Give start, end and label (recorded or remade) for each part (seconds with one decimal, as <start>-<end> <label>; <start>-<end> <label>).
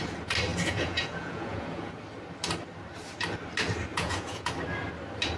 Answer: 0.0-0.5 recorded; 0.5-2.0 remade; 2.0-3.9 recorded; 3.9-4.5 remade; 4.5-5.4 recorded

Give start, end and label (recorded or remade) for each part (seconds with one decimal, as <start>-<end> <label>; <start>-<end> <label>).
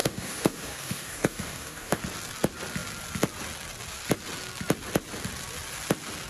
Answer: 0.0-2.0 remade; 2.0-6.3 recorded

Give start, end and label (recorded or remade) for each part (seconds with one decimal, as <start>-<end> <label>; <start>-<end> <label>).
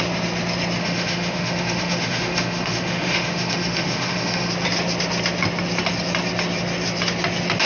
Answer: 0.0-0.8 recorded; 0.8-4.5 remade; 4.5-7.7 recorded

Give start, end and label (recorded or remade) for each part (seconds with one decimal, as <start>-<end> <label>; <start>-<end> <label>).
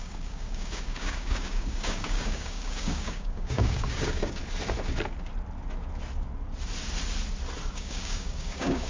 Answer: 0.0-4.4 remade; 4.4-7.7 recorded; 7.7-8.9 remade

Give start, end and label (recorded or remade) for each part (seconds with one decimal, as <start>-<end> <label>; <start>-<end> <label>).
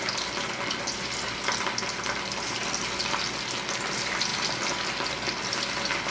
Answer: 0.0-6.1 recorded